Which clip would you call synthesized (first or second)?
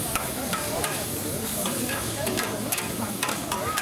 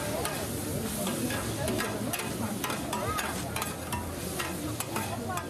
first